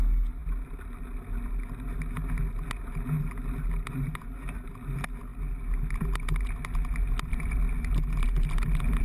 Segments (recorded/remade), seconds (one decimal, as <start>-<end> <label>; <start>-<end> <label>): 0.0-9.0 recorded